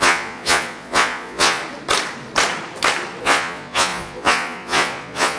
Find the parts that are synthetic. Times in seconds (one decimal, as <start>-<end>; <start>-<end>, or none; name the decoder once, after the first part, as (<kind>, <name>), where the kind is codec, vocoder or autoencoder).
0.0-1.6 (vocoder, Vocos); 3.2-5.4